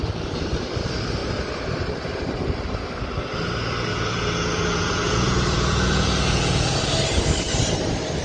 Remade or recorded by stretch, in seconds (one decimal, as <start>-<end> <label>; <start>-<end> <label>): 0.0-3.9 recorded; 3.9-6.8 remade; 6.8-8.2 recorded